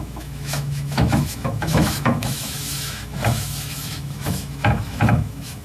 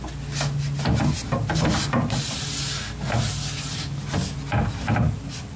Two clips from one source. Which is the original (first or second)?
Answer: second